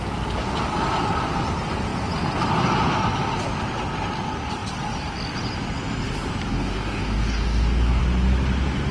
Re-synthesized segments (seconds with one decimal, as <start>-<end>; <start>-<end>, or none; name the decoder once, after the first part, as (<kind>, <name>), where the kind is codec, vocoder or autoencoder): 6.5-8.0 (codec, DAC)